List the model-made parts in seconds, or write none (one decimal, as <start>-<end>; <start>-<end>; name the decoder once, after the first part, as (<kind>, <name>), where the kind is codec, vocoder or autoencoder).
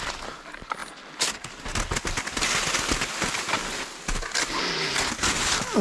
none